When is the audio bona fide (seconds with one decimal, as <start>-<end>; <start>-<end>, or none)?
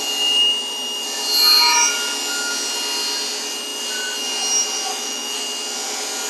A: 0.0-4.9; 5.4-6.3